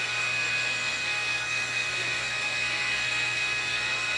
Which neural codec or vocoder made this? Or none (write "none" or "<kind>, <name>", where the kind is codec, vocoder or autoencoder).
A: codec, SNAC